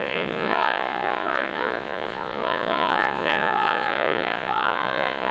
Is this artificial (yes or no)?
yes